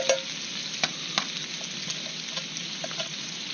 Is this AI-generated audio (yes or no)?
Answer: no